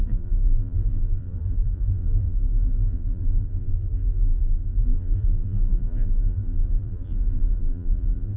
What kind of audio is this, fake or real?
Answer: fake